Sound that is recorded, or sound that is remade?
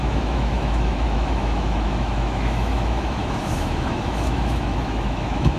remade